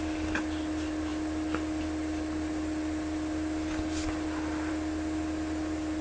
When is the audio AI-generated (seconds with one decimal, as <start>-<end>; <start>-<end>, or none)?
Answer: none

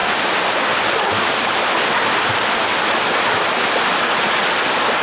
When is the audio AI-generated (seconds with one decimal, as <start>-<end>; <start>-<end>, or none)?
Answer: none